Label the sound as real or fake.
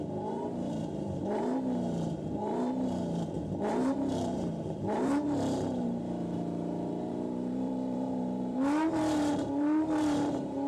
fake